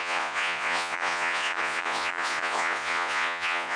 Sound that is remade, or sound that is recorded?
remade